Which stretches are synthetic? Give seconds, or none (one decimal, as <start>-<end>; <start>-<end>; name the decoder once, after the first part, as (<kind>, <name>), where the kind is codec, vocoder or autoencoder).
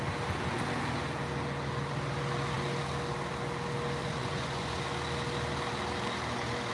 4.0-4.8 (vocoder, Vocos)